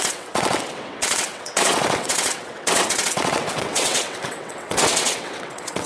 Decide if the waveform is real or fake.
fake